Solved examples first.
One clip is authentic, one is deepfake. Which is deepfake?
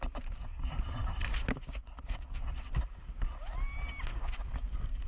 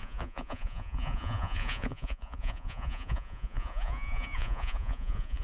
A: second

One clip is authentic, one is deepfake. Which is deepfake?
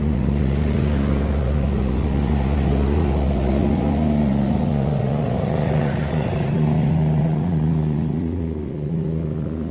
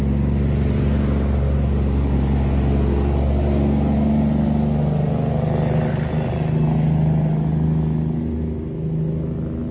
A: first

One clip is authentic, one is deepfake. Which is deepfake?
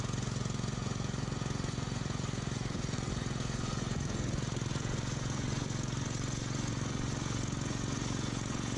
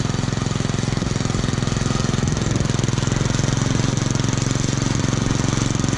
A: first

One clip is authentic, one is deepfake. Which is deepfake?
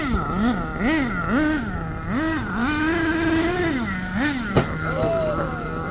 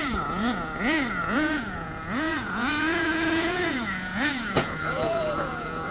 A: second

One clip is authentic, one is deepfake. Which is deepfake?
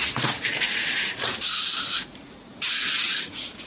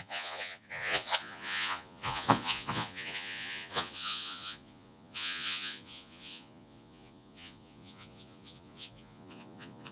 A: second